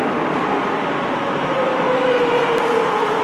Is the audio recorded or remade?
recorded